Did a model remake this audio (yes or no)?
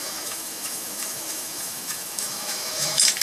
yes